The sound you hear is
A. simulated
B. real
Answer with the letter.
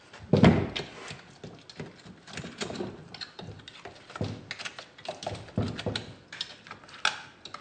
B